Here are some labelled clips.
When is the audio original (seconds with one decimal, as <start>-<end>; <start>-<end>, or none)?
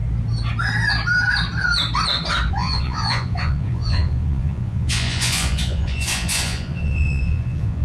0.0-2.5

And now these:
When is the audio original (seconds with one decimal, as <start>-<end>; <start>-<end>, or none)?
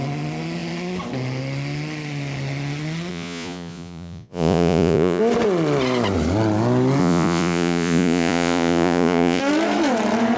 0.0-3.1; 5.2-7.0; 9.4-10.4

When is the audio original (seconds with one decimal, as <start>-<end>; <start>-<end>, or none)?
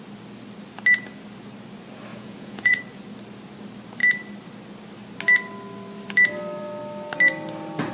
0.0-2.1; 2.8-7.9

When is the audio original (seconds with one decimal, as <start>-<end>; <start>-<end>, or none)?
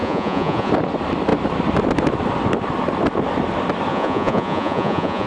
0.7-3.9